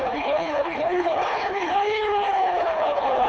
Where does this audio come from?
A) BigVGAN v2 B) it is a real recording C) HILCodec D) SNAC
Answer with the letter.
C